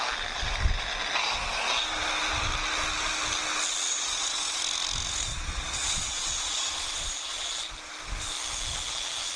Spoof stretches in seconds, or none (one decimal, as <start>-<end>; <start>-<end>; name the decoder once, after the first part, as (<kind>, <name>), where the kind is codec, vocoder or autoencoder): 3.9-4.6 (vocoder, Vocos); 5.3-7.5